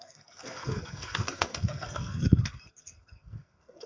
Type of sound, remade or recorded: remade